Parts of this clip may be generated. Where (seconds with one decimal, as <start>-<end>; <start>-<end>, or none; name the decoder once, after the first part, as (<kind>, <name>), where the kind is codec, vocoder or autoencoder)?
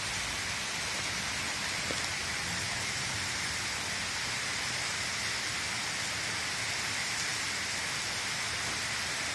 2.2-3.3 (vocoder, BigVGAN v2); 7.3-7.8